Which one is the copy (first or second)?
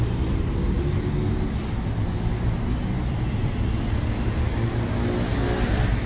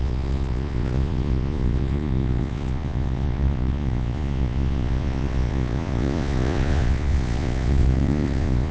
second